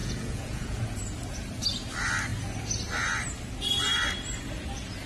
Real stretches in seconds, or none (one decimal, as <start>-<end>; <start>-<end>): 0.8-5.1